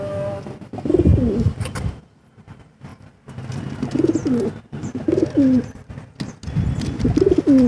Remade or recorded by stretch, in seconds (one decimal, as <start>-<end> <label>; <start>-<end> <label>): 0.0-7.7 recorded